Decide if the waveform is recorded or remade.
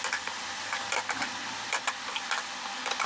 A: recorded